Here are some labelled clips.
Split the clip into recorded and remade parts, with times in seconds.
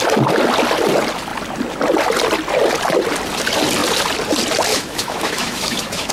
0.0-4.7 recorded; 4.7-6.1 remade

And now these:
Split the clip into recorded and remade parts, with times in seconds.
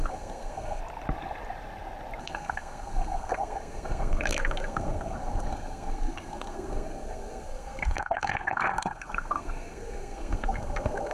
0.0-0.8 remade; 0.8-2.2 recorded; 2.2-11.1 remade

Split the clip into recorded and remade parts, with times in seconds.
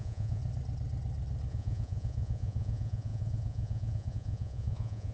0.0-0.4 remade; 0.4-1.5 recorded; 1.5-5.1 remade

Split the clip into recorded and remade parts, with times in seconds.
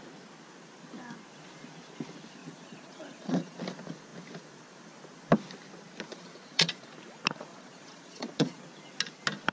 0.0-2.4 recorded; 2.4-3.6 remade; 3.6-6.1 recorded; 6.1-6.9 remade; 6.9-7.5 recorded; 7.5-8.6 remade; 8.6-9.5 recorded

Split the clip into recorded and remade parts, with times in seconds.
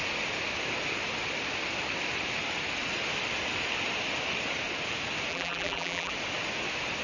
0.0-5.3 recorded; 5.3-6.1 remade; 6.1-7.0 recorded